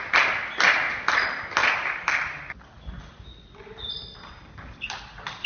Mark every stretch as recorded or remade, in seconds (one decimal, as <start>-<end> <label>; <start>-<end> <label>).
0.0-5.5 recorded